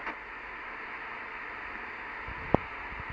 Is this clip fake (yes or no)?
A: no